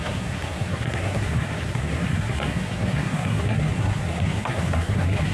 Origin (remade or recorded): remade